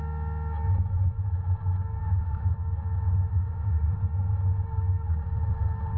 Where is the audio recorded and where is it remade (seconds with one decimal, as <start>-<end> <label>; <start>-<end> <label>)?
0.0-2.0 recorded; 2.0-2.5 remade; 2.5-3.3 recorded; 3.3-4.0 remade; 4.0-6.0 recorded